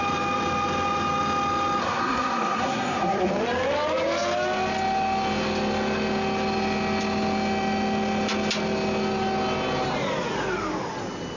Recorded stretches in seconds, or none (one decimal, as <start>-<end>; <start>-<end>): 0.0-1.8; 3.3-11.4